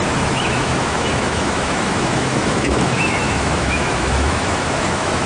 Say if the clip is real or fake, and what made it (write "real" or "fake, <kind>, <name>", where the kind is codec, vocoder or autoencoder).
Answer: fake, autoencoder, DAC-VAE